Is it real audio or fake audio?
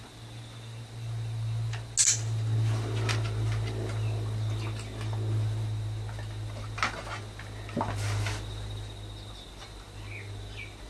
real